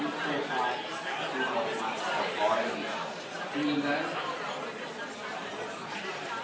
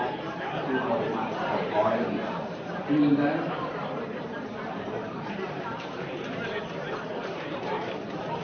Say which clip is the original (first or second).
first